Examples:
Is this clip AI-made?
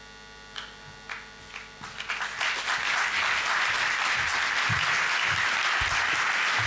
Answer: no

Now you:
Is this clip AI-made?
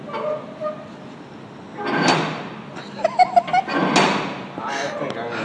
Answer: no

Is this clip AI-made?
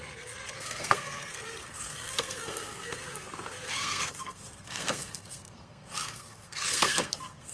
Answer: yes